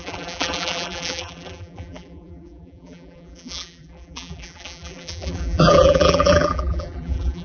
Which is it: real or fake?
fake